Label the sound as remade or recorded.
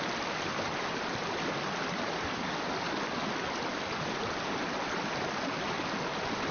recorded